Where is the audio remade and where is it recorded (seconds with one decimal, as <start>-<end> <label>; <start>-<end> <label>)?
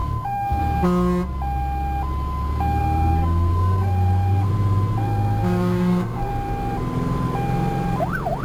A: 0.0-0.6 remade; 0.6-2.8 recorded; 2.8-4.5 remade; 4.5-5.0 recorded; 5.0-6.3 remade; 6.3-8.4 recorded